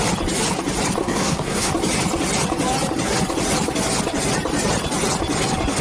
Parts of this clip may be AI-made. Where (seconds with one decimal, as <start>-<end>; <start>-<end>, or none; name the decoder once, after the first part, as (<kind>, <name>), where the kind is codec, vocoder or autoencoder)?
1.0-1.7 (codec, SNAC)